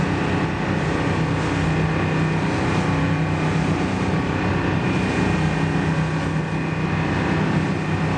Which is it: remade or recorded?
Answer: recorded